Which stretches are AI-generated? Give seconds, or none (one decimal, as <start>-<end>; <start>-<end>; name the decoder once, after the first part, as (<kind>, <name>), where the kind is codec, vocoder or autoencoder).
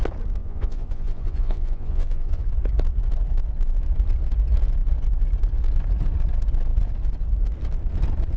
0.4-2.5 (vocoder, Vocos)